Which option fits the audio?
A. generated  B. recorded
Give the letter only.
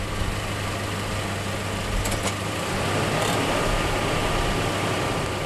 B